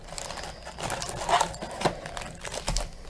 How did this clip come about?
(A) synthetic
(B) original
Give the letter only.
B